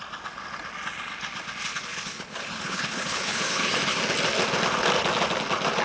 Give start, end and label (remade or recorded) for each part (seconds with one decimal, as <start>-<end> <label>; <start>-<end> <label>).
0.0-1.7 recorded; 1.7-4.0 remade; 4.0-5.8 recorded